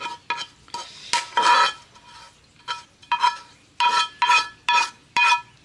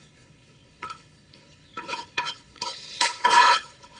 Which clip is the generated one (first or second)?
second